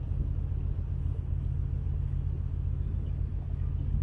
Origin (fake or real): real